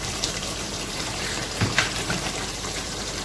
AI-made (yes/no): yes